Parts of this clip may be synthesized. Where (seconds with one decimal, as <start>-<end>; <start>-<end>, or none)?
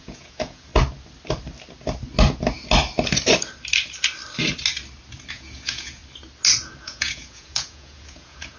0.0-0.7; 5.3-6.0; 6.8-8.6